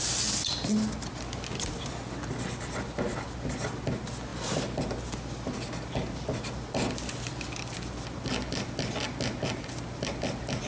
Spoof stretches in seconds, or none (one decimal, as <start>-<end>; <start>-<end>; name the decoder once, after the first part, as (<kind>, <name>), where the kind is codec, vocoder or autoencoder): none